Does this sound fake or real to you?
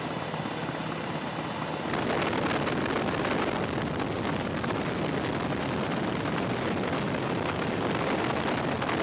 real